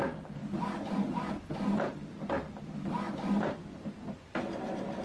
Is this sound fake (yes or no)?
no